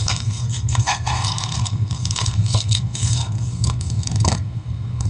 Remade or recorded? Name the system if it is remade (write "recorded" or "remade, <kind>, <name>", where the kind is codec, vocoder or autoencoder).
remade, codec, SNAC